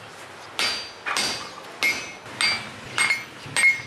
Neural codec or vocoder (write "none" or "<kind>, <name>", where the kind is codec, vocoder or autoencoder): none